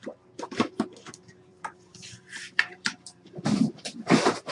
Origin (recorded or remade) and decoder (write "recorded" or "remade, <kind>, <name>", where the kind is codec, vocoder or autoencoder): remade, vocoder, BigVGAN v2